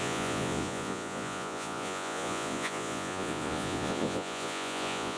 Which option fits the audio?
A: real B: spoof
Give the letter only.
B